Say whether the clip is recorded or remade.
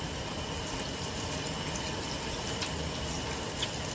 recorded